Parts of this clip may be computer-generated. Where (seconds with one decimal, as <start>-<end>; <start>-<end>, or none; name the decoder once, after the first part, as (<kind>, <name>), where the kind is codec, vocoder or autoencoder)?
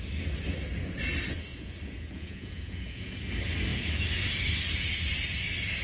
1.5-3.1 (vocoder, Vocos)